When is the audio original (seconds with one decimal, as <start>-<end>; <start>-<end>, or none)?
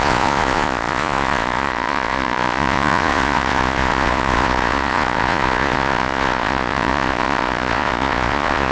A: none